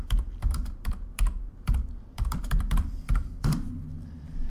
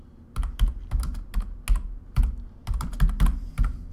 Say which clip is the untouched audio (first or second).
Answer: second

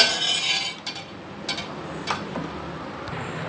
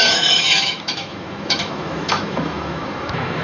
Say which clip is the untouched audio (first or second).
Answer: first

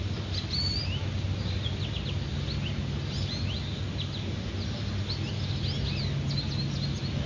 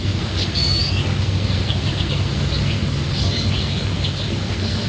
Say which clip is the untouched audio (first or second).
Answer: first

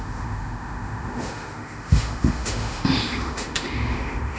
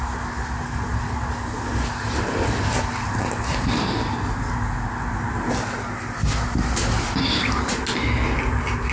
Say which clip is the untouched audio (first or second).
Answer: second